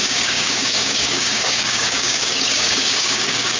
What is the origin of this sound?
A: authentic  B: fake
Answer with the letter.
B